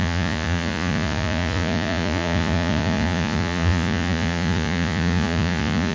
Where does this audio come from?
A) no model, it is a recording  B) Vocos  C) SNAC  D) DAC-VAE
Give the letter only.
B